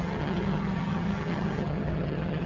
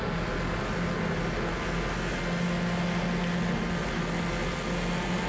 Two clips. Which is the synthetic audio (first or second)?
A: first